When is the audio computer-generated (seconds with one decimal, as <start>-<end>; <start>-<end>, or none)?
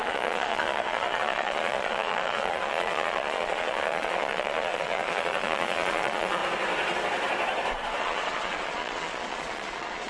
0.0-6.4; 8.0-10.1